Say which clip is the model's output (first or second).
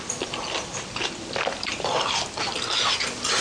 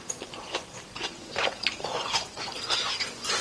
second